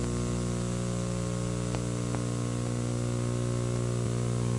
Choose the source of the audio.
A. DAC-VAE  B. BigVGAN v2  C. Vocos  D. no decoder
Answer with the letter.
D